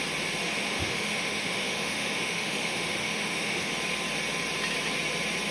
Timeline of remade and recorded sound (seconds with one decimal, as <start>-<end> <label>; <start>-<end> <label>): 0.0-0.4 recorded; 0.4-3.7 remade; 3.7-5.5 recorded